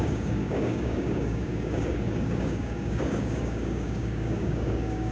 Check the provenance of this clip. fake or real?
fake